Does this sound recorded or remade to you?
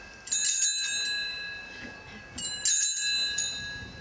recorded